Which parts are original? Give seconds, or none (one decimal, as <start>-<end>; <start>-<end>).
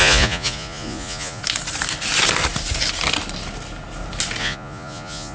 1.4-4.4